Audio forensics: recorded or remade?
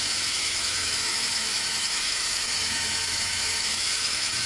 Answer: remade